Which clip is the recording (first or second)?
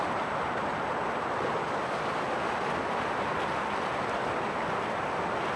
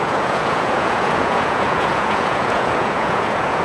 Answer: first